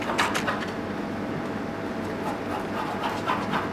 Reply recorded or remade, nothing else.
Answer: recorded